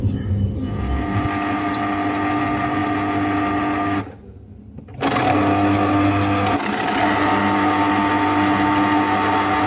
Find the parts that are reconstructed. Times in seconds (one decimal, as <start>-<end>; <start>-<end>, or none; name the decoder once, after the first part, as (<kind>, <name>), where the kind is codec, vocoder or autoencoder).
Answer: none